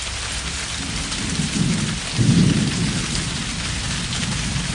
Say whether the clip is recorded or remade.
recorded